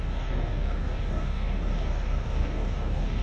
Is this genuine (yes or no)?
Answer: no